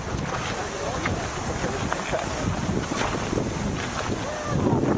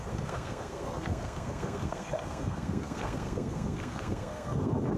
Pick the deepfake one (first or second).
second